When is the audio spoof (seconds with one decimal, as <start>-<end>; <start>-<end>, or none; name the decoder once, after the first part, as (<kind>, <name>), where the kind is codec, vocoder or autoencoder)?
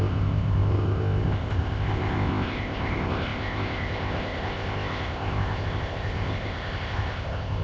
0.0-7.6 (codec, ZipCodec)